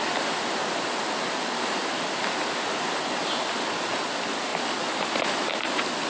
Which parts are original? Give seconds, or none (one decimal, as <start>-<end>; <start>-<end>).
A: 0.0-4.5; 5.1-6.1